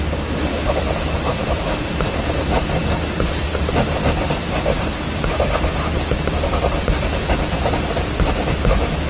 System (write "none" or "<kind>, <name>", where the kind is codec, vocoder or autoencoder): vocoder, BigVGAN v2